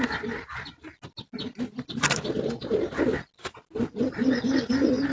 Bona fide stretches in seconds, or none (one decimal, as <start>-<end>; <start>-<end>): 0.0-5.1